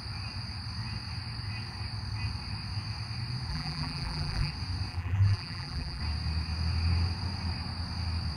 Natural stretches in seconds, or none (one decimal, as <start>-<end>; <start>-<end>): 0.0-3.5; 4.5-4.9; 6.0-8.4